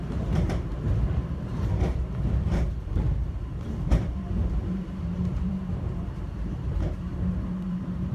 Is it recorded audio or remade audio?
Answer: remade